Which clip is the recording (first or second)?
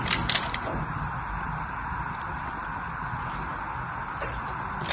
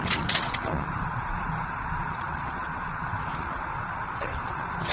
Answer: first